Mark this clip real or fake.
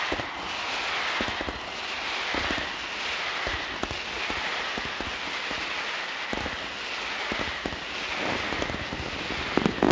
real